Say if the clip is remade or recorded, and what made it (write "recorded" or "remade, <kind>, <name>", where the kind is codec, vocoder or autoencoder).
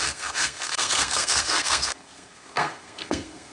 remade, codec, SNAC